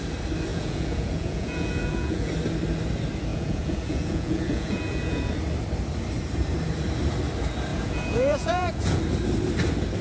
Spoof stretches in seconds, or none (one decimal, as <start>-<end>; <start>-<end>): 0.5-2.3; 3.3-5.3; 7.7-9.0